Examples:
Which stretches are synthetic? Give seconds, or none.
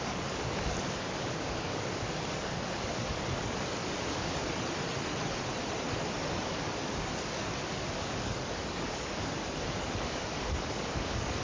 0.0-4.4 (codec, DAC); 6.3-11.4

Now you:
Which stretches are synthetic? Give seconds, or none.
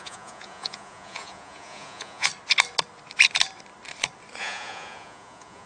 0.0-2.3 (vocoder, Vocos); 4.4-5.7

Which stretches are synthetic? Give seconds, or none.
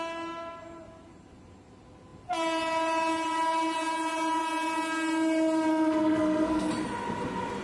5.7-6.7 (codec, SNAC)